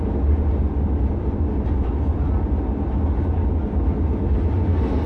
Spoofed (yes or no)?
no